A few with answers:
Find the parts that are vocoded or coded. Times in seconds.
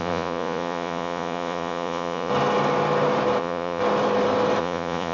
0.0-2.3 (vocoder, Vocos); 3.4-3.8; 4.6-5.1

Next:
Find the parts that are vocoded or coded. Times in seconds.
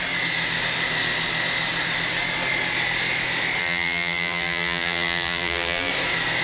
3.6-5.9 (vocoder, BigVGAN v2)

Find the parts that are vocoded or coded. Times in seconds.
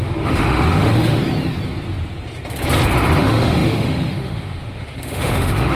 0.0-1.2 (autoencoder, DAC-VAE); 3.2-5.8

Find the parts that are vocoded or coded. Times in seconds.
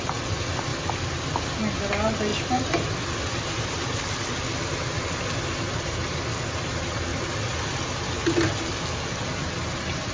0.7-1.4 (vocoder, BigVGAN v2); 2.3-4.3; 7.1-7.8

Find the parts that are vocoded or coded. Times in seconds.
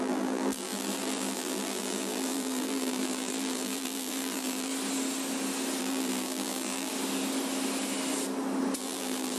0.0-4.7 (vocoder, BigVGAN v2); 5.8-6.9; 8.8-9.4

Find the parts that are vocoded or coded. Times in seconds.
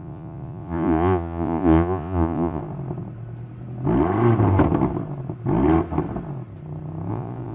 0.0-2.6 (vocoder, Vocos); 7.1-7.5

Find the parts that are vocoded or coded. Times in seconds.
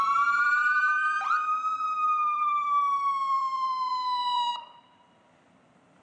0.0-6.0 (vocoder, BigVGAN v2)